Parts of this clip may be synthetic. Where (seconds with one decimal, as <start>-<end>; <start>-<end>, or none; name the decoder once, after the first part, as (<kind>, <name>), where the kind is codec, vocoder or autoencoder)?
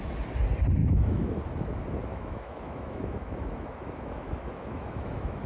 0.8-1.4 (autoencoder, DAC-VAE); 2.1-5.5